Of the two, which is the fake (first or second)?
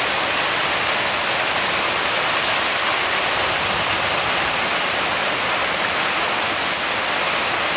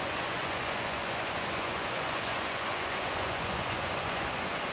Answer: second